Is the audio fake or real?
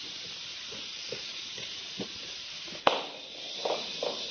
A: real